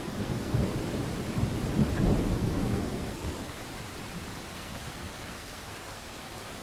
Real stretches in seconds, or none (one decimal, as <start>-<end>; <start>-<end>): 0.7-2.2; 3.6-4.5